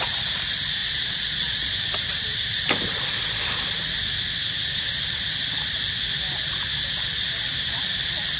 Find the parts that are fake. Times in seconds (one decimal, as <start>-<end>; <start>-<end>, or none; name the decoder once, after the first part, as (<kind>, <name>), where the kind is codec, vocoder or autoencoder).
0.8-1.7 (vocoder, Vocos)